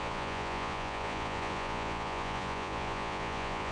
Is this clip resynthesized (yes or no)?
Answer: yes